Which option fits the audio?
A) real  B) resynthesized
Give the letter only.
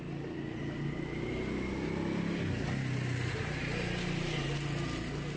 A